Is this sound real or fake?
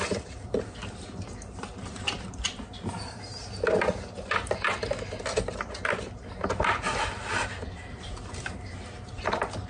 real